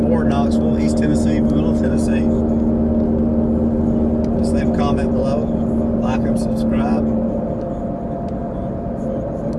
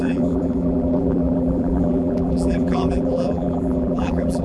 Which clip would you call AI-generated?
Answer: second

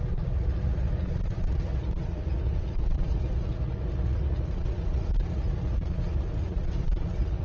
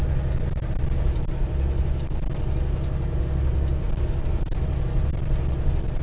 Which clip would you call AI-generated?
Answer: first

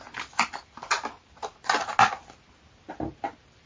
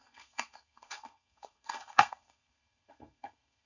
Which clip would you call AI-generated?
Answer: second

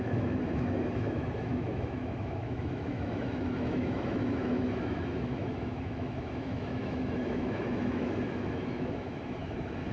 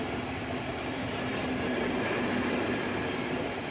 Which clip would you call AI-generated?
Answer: first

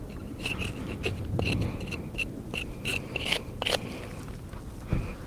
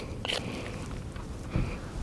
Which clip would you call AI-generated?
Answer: second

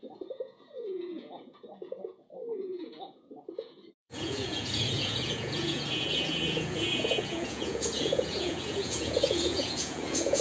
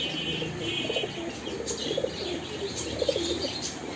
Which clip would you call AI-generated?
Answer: first